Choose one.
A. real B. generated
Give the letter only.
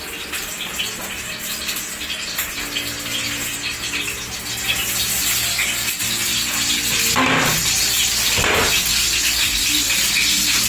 A